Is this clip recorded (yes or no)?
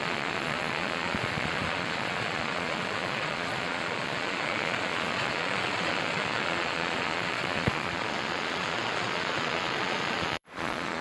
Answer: no